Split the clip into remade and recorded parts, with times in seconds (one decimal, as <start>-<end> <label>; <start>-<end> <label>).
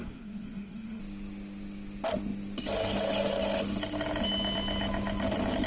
0.0-1.0 remade; 1.0-5.7 recorded